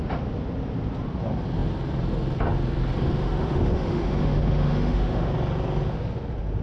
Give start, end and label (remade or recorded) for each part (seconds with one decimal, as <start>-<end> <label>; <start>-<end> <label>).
0.0-3.2 recorded; 3.2-5.3 remade; 5.3-6.6 recorded

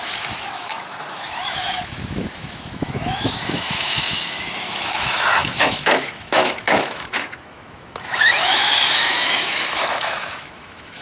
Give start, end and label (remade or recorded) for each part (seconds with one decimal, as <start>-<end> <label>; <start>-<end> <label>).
0.0-11.0 remade

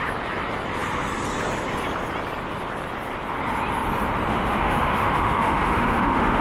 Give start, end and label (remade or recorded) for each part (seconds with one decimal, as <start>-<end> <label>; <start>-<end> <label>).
0.0-4.3 recorded; 4.3-6.4 remade

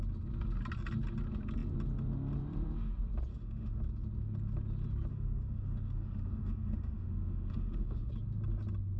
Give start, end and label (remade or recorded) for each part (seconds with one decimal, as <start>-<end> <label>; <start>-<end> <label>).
0.0-3.3 recorded; 3.3-3.8 remade; 3.8-5.1 recorded; 5.1-8.1 remade; 8.1-9.0 recorded

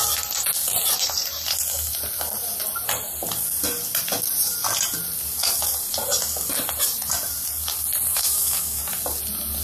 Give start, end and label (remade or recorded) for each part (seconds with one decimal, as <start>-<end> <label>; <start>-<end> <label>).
0.0-8.1 recorded; 8.1-8.8 remade; 8.8-9.6 recorded